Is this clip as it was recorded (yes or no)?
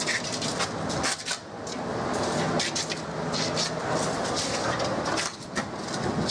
yes